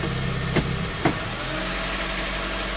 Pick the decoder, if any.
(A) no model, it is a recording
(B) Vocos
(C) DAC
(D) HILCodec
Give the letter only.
A